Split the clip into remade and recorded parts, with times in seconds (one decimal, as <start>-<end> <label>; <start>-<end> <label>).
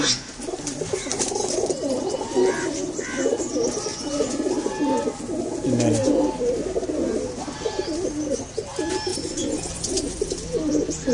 0.0-3.9 recorded; 3.9-4.5 remade; 4.5-9.1 recorded; 9.1-10.2 remade; 10.2-11.1 recorded